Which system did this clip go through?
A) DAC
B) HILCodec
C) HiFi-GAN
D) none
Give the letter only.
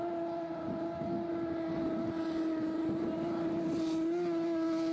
D